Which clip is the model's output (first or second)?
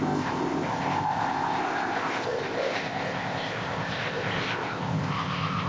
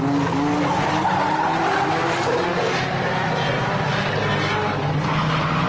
first